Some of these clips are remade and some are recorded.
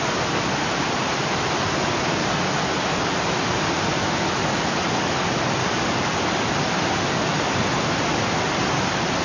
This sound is recorded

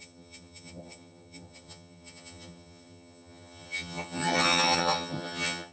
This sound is remade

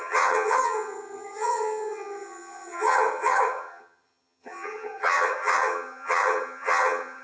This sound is remade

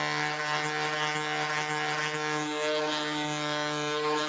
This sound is recorded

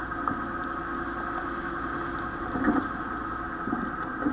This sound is recorded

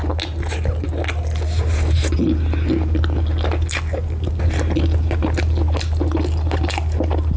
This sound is recorded